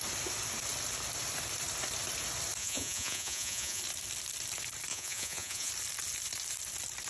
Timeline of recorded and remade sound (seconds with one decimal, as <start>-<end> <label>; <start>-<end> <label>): 0.0-2.6 recorded; 2.6-3.8 remade; 3.8-4.9 recorded; 4.9-5.7 remade; 5.7-7.1 recorded